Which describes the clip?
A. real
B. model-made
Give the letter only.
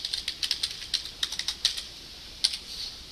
A